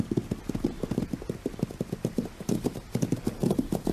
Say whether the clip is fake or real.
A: real